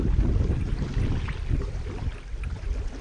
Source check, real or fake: real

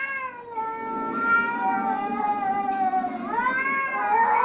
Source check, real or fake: real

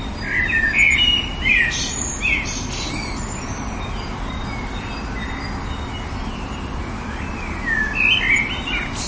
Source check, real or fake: real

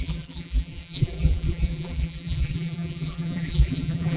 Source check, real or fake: fake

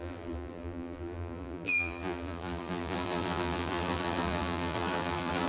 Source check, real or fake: fake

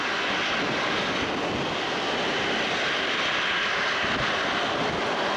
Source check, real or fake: real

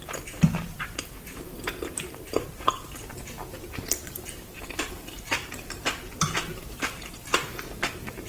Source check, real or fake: fake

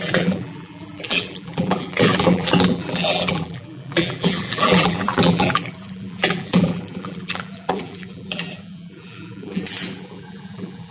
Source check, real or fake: fake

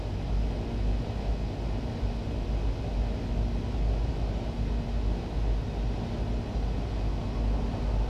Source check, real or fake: real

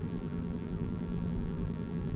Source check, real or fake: fake